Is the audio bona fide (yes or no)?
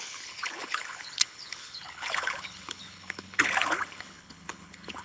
no